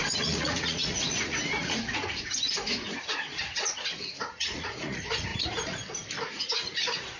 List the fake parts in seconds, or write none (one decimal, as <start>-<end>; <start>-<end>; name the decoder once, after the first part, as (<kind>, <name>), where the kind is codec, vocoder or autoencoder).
0.0-5.3 (vocoder, Vocos); 6.3-7.2